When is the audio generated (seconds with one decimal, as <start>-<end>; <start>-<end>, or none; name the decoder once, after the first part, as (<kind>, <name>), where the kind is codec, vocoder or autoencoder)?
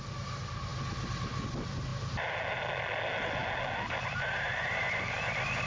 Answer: none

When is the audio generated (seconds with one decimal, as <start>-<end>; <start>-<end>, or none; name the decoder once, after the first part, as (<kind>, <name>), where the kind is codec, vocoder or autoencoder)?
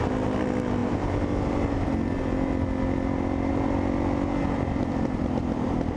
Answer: none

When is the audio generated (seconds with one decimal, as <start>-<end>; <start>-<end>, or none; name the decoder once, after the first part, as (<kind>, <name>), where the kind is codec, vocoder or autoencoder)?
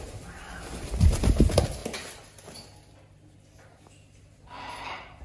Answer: 0.0-1.8 (vocoder, BigVGAN v2)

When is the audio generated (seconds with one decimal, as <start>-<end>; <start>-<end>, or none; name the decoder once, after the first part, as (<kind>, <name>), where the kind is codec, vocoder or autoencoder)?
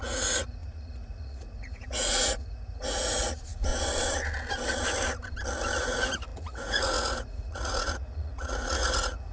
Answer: 0.0-3.7 (vocoder, Vocos); 5.8-9.3